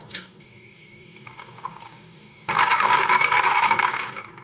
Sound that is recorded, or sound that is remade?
remade